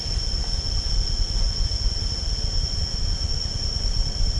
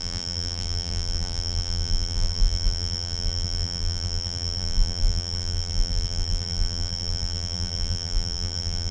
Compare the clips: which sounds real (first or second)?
first